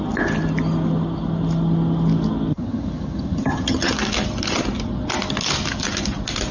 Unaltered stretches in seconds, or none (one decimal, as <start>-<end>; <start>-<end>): 0.0-2.5; 3.9-6.5